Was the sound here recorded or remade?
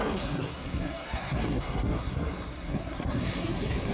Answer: remade